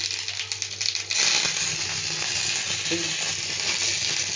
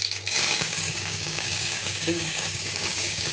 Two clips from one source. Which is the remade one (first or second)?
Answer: second